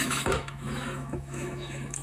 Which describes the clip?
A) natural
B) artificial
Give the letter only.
B